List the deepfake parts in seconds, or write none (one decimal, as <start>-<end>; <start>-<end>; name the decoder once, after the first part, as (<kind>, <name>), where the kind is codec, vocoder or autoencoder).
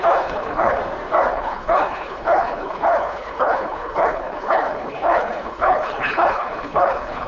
0.0-0.8 (codec, HILCodec); 1.3-7.3